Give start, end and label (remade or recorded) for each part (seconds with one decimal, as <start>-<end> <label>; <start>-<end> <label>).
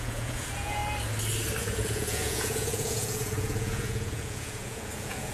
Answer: 0.0-0.8 remade; 0.8-1.6 recorded; 1.6-5.3 remade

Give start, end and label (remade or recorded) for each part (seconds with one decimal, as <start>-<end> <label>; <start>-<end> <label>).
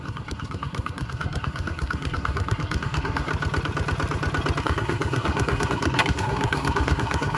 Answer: 0.0-3.3 remade; 3.3-4.6 recorded; 4.6-7.4 remade